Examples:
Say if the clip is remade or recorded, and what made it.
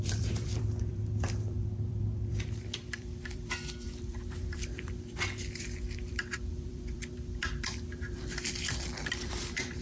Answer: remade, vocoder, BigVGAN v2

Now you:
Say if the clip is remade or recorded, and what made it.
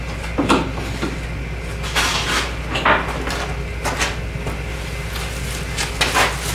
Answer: recorded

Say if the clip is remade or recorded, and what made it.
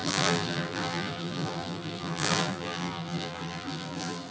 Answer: remade, vocoder, BigVGAN v2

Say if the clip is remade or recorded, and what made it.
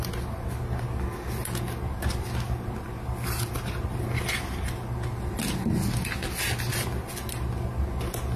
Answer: recorded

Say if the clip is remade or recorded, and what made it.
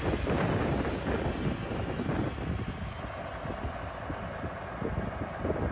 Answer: recorded